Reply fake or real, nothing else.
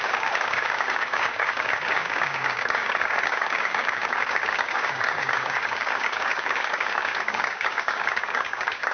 fake